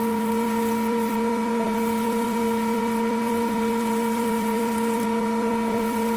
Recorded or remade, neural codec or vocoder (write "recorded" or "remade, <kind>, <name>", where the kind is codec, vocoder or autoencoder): remade, vocoder, BigVGAN v2